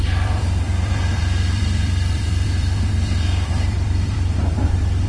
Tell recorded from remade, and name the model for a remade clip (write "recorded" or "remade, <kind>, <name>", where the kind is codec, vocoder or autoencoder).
remade, vocoder, BigVGAN v2